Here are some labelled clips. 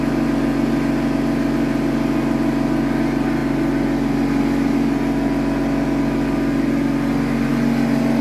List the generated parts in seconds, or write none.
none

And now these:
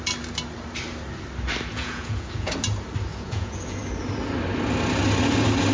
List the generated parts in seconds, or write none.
1.7-2.5 (vocoder, Vocos); 3.1-3.8

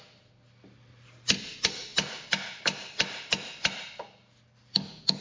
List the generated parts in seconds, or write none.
none